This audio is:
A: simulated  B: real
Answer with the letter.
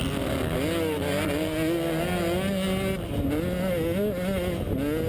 B